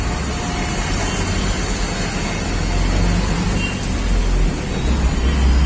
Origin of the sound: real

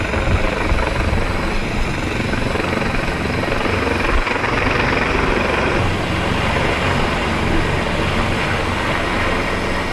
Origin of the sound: real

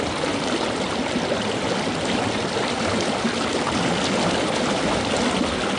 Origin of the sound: real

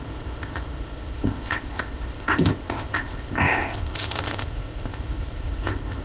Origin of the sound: fake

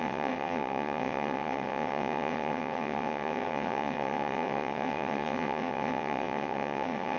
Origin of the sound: fake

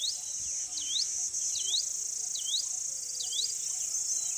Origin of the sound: real